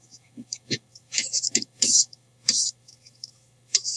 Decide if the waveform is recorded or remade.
remade